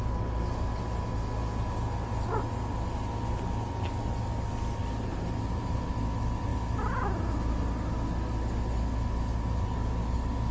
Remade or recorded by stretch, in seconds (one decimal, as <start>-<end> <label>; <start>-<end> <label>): 0.0-4.8 recorded; 4.8-5.9 remade; 5.9-9.3 recorded; 9.3-10.5 remade